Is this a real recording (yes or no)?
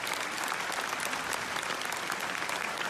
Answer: yes